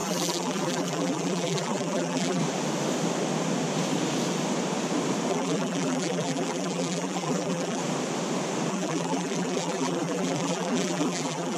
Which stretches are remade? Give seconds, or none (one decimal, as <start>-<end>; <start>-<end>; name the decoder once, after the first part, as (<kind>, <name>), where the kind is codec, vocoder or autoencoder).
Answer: 0.0-2.4 (vocoder, BigVGAN v2); 5.3-7.8; 8.7-11.6